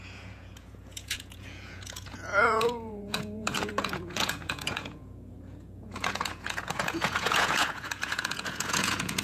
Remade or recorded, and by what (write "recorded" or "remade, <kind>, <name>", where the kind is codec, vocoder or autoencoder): remade, vocoder, Vocos